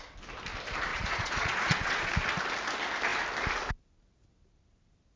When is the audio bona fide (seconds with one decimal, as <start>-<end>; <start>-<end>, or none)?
0.0-0.9; 2.1-5.2